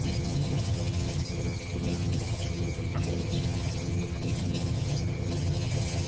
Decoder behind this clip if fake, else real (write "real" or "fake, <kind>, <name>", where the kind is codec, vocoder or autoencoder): fake, vocoder, HiFi-GAN